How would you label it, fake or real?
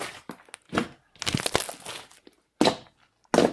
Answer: real